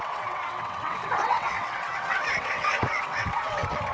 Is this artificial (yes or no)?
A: yes